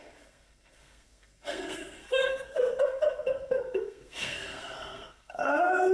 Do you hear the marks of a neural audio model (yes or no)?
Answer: yes